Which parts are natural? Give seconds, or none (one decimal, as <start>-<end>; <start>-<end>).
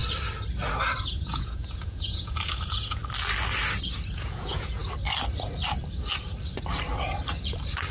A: 0.0-1.0; 3.0-4.1; 4.8-7.9